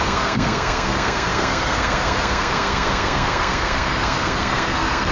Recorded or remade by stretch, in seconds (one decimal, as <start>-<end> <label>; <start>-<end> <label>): 0.0-5.1 remade